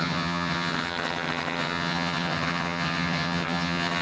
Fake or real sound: fake